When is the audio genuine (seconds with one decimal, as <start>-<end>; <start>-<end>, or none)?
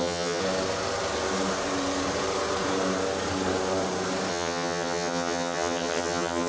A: 0.4-4.3